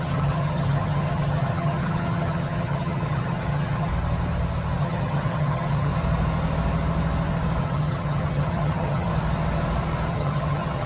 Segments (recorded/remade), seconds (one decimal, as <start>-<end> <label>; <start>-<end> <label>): 0.0-3.9 remade; 3.9-4.8 recorded; 4.8-5.9 remade; 5.9-7.6 recorded; 7.6-9.1 remade; 9.1-10.1 recorded; 10.1-10.9 remade